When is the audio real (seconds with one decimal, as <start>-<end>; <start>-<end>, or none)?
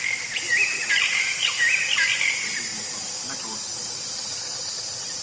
2.7-3.9